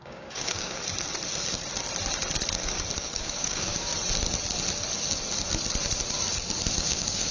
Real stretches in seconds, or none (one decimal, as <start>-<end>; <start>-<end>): 0.8-3.0; 3.9-6.7